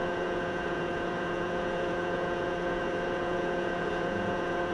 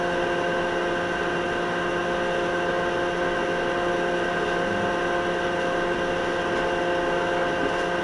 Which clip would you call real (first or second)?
second